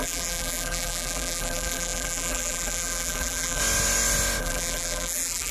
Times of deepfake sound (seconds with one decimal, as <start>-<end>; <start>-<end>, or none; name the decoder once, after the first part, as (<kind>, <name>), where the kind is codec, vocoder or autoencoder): 0.0-3.6 (vocoder, BigVGAN v2); 4.4-5.5